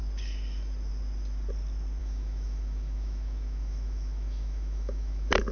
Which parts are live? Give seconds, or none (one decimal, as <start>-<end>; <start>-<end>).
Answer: 0.0-2.0